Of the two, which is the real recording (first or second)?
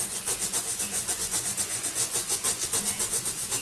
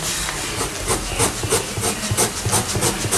second